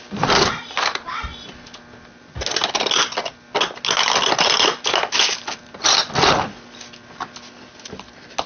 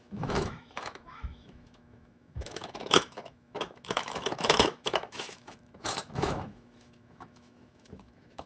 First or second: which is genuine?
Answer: first